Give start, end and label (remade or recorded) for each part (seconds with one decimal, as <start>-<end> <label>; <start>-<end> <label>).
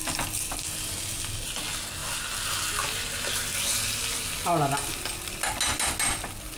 0.0-6.6 recorded